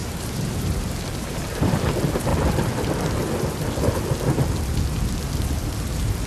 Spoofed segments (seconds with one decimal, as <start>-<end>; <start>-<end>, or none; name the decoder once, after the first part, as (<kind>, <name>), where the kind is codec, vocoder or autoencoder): 0.0-1.9 (vocoder, BigVGAN v2)

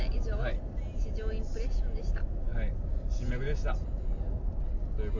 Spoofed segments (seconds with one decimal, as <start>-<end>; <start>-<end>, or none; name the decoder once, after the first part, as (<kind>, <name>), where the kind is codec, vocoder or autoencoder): 2.5-3.3 (vocoder, BigVGAN v2)

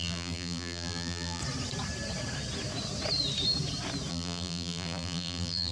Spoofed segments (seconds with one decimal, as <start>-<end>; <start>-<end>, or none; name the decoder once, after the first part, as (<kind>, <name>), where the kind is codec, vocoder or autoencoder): 0.0-1.4 (vocoder, BigVGAN v2); 4.1-5.7